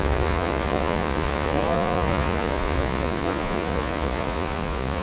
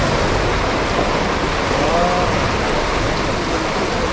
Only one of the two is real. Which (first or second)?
second